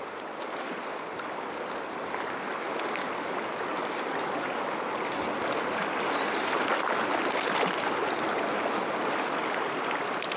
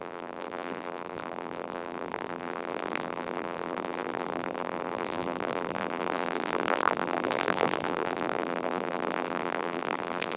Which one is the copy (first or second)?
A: second